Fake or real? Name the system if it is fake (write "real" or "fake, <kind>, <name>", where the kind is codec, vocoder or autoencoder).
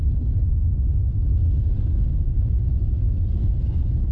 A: fake, vocoder, BigVGAN v2